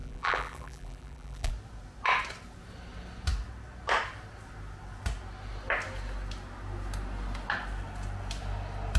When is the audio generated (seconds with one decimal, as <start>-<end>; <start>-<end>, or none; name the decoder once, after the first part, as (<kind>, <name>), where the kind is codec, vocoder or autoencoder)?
0.0-1.5 (vocoder, BigVGAN v2)